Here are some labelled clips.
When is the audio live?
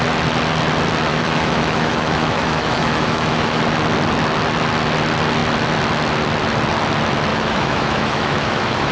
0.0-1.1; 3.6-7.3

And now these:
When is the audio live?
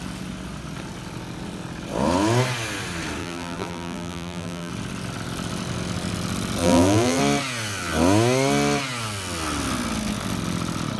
0.0-3.2; 4.7-6.6; 7.2-11.0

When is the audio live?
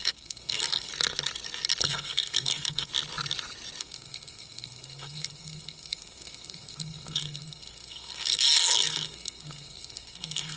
0.9-1.8; 2.9-3.8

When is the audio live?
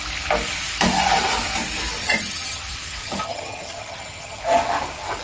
0.0-2.0; 2.6-3.0; 4.4-5.2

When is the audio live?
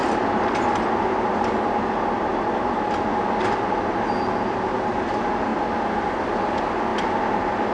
0.0-7.7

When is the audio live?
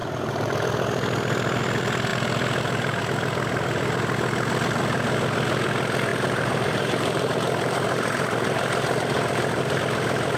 0.5-6.1; 9.8-10.4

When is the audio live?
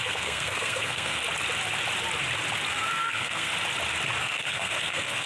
1.2-2.7; 3.5-4.2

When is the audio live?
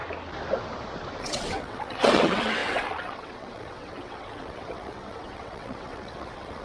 0.0-1.2